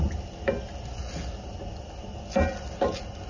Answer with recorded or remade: recorded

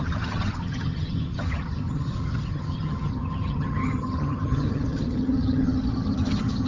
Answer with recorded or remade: remade